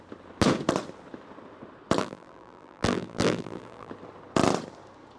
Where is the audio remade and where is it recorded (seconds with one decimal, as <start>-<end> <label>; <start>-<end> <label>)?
0.0-2.0 recorded; 2.0-3.9 remade; 3.9-5.2 recorded